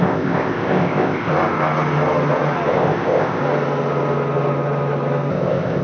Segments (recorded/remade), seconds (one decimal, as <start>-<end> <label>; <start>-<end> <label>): 0.0-1.3 remade; 1.3-2.7 recorded; 2.7-3.4 remade; 3.4-5.3 recorded; 5.3-5.8 remade